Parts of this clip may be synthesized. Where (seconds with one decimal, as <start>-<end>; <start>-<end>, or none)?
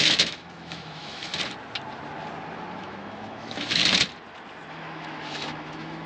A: 0.0-1.3; 2.8-3.8; 4.7-6.1